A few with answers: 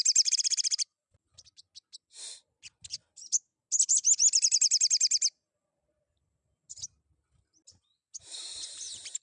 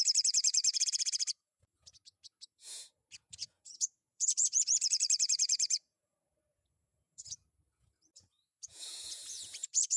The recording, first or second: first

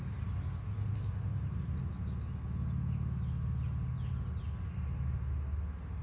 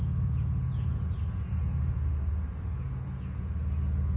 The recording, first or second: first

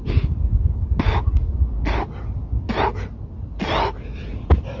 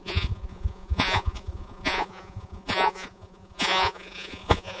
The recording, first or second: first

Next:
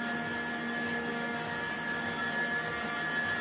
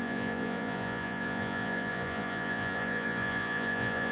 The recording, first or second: first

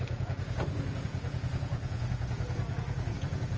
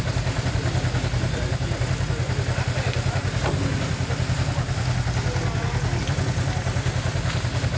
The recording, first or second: second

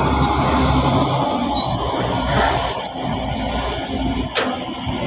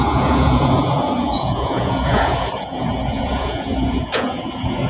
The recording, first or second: first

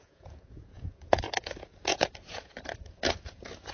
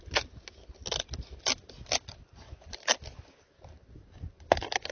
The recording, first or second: second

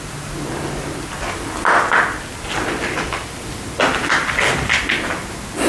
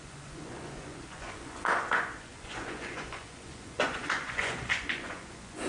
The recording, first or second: first